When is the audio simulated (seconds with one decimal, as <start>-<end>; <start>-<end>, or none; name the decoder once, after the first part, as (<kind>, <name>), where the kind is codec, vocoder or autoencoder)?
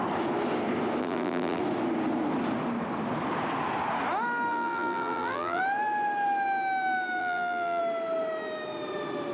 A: 1.0-1.6 (vocoder, BigVGAN v2); 4.5-5.6; 7.2-7.8